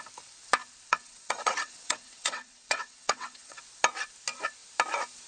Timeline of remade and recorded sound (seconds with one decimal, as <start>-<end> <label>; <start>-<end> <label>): 0.0-0.9 recorded; 0.9-3.6 remade; 3.6-5.3 recorded